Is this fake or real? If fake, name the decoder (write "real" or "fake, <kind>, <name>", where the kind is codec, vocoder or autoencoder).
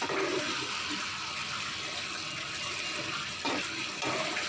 real